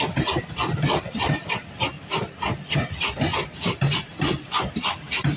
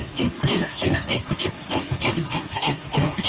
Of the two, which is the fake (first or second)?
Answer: second